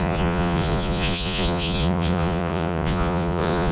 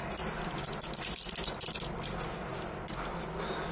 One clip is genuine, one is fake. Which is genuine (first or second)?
second